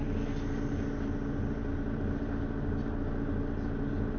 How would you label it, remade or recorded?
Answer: recorded